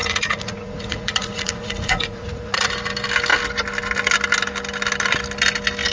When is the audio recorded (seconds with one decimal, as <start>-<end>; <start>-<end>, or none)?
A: 2.7-5.9